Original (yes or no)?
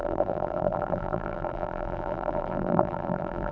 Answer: no